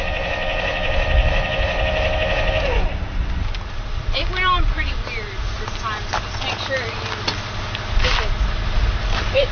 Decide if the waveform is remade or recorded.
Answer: recorded